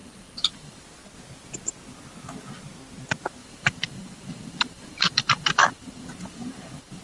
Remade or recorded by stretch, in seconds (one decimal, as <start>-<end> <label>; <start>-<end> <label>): 0.0-0.8 remade; 0.8-3.4 recorded; 3.4-7.0 remade